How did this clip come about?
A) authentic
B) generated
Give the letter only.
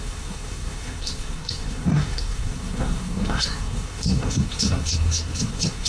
B